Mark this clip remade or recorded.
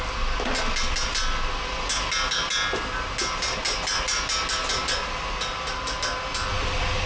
recorded